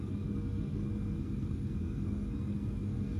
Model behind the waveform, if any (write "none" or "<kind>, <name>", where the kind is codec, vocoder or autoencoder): codec, SNAC